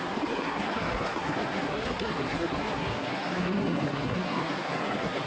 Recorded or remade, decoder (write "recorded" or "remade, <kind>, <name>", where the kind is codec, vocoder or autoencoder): remade, codec, SNAC